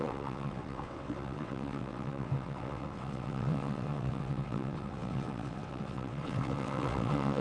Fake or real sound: fake